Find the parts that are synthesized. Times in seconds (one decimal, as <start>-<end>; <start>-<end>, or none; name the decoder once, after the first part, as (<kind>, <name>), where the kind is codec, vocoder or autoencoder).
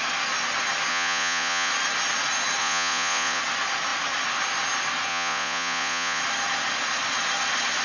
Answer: 0.9-1.7 (vocoder, Vocos); 2.6-3.4; 5.1-6.2